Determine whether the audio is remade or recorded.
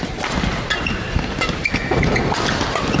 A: recorded